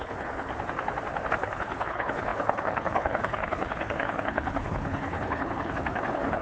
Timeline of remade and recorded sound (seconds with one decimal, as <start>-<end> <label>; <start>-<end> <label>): 0.0-0.5 remade; 0.5-1.3 recorded; 1.3-6.4 remade